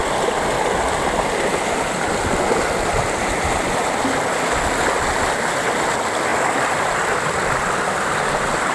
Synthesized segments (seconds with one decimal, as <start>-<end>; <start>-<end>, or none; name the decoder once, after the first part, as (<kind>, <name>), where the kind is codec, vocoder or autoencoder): 0.0-3.4 (vocoder, BigVGAN v2)